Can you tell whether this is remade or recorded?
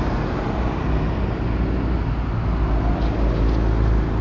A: recorded